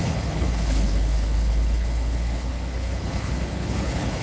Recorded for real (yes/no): no